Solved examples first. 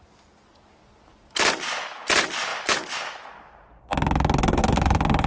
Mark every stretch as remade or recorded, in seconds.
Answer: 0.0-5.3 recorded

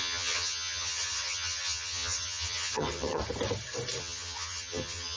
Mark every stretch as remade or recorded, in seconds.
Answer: 0.0-3.2 remade; 3.2-4.0 recorded; 4.0-5.2 remade

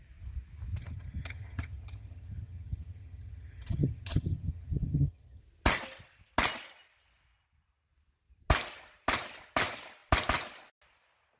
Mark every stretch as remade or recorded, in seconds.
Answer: 0.0-0.8 recorded; 0.8-5.4 remade; 5.4-11.4 recorded

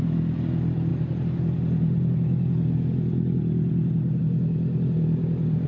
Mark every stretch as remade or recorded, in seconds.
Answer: 0.0-5.7 recorded

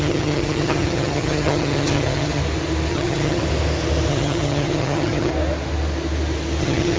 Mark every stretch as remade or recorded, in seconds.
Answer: 0.0-2.4 remade; 2.4-2.9 recorded; 2.9-3.4 remade; 3.4-4.1 recorded; 4.1-5.3 remade; 5.3-6.6 recorded; 6.6-7.0 remade

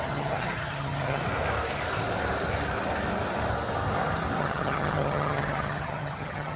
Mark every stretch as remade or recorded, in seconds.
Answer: 0.0-1.2 remade; 1.2-4.4 recorded; 4.4-6.6 remade

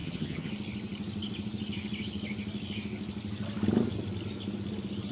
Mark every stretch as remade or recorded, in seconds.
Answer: 0.0-0.5 remade; 0.5-5.1 recorded